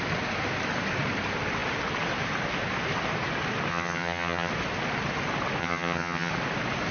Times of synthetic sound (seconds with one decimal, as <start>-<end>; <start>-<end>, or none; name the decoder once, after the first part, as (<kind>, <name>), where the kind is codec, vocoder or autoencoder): 3.7-4.5 (vocoder, HiFi-GAN); 5.6-6.3